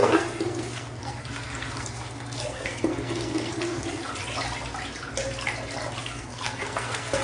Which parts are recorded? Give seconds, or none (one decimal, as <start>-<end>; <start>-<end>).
4.0-6.0